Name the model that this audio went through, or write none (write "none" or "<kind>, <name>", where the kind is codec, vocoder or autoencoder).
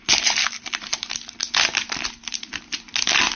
none